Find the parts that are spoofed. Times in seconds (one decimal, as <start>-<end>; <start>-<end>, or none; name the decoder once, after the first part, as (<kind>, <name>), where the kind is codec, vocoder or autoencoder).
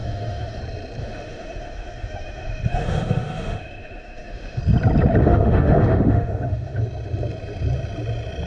0.0-0.6 (autoencoder, DAC-VAE); 1.0-4.6; 5.2-6.8